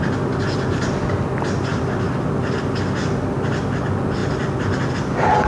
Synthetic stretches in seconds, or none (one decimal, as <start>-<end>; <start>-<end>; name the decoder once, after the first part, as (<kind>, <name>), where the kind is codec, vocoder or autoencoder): none